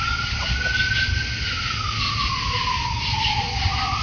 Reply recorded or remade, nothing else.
recorded